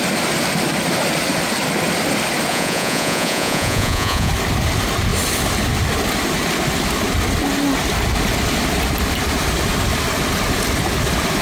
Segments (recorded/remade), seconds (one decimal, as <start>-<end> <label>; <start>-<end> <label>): 0.0-2.5 recorded; 2.5-4.3 remade; 4.3-11.4 recorded